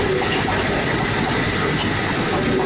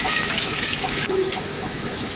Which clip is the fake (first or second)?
second